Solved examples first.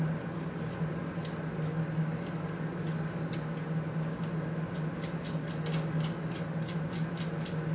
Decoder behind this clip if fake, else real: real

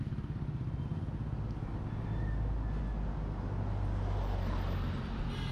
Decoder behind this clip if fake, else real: real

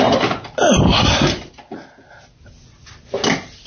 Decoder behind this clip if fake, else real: real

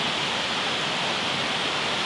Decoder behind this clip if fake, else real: real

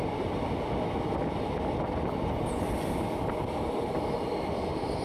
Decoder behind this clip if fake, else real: real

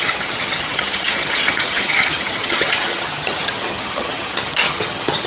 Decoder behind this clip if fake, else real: fake, vocoder, HiFi-GAN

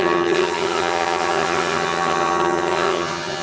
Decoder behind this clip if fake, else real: fake, vocoder, HiFi-GAN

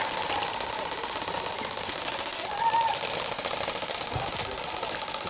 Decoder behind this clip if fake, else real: real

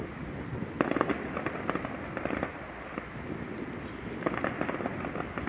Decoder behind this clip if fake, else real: real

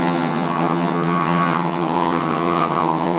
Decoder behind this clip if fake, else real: fake, vocoder, HiFi-GAN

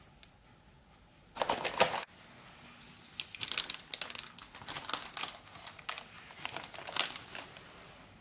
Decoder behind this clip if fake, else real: real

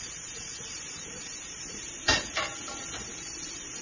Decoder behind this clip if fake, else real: fake, vocoder, BigVGAN v2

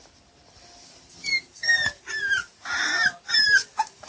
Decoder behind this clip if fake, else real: real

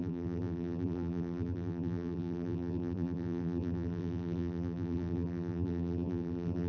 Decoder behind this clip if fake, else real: fake, vocoder, BigVGAN v2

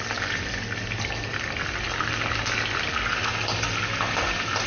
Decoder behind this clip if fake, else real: real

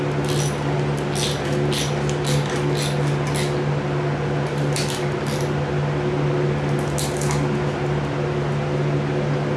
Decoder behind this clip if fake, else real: real